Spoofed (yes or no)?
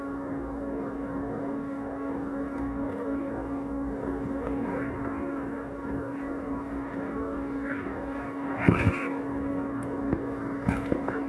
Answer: yes